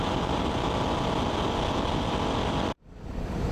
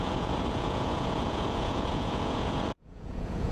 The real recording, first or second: first